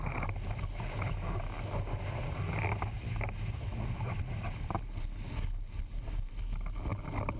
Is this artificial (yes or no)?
no